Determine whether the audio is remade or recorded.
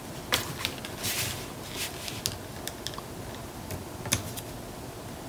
recorded